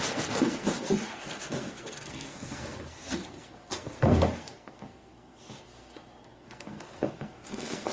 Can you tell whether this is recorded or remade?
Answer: remade